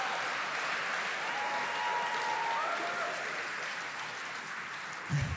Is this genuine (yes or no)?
yes